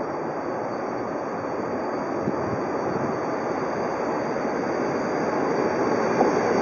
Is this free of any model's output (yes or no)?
yes